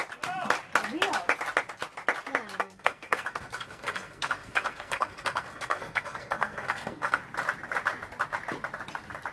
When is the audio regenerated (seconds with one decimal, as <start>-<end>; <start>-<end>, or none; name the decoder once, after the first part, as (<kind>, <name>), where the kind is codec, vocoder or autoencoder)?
2.6-7.2 (codec, SNAC)